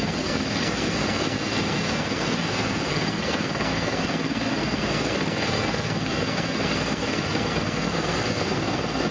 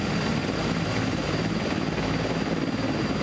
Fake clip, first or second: first